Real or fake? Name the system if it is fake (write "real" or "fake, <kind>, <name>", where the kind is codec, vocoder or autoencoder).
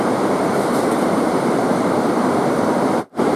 fake, vocoder, BigVGAN v2